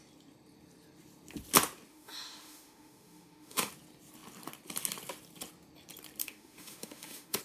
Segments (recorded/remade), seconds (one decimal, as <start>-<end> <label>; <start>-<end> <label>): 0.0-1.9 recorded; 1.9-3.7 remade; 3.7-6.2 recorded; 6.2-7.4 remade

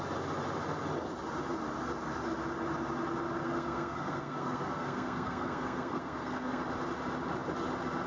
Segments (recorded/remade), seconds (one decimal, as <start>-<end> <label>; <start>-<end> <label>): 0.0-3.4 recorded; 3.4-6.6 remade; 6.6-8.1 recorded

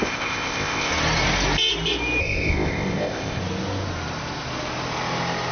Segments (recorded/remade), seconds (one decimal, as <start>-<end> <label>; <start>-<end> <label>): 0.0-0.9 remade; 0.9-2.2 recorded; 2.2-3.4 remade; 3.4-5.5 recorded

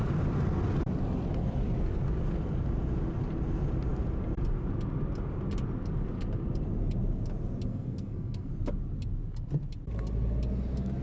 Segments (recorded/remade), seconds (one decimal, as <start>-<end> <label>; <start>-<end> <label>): 0.0-7.7 recorded; 7.7-8.5 remade; 8.5-11.0 recorded

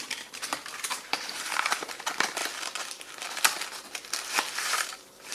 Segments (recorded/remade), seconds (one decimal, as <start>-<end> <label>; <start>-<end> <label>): 0.0-2.4 remade; 2.4-4.6 recorded; 4.6-5.3 remade

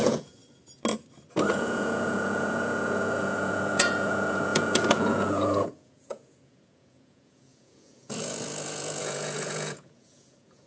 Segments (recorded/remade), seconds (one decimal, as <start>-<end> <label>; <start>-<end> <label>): 0.0-0.4 remade; 0.4-1.5 recorded; 1.5-10.7 remade

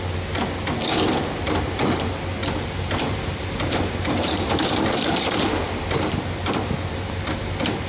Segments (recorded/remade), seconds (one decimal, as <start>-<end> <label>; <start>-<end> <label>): 0.0-2.4 recorded; 2.4-5.5 remade; 5.5-7.9 recorded